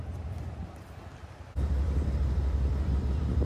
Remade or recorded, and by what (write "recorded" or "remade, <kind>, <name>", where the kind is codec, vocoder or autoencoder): recorded